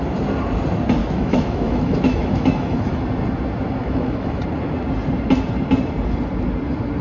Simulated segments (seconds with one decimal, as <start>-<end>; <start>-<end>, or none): 1.0-3.0; 3.8-4.4